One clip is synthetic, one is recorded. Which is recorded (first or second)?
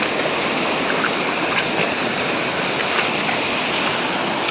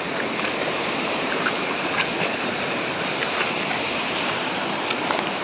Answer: first